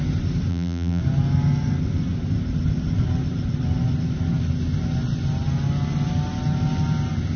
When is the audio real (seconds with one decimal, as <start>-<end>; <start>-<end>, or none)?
0.0-0.5; 1.0-7.4

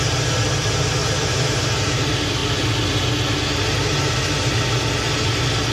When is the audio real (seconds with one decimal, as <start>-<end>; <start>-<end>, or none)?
0.0-1.0; 2.0-5.7

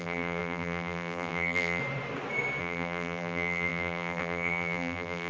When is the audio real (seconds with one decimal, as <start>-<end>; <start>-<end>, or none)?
1.8-2.6

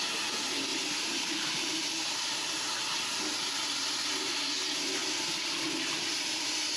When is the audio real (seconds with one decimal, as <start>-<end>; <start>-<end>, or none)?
0.0-0.7; 2.8-6.8